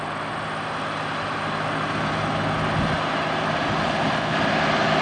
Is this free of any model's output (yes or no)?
yes